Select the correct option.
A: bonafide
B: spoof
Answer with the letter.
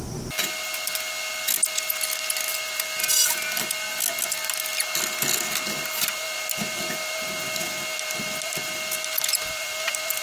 A